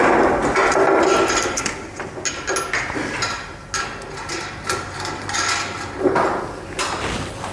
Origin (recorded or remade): recorded